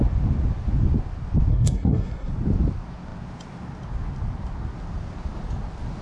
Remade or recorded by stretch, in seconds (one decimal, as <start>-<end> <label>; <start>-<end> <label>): 0.0-1.5 recorded; 1.5-2.3 remade; 2.3-6.0 recorded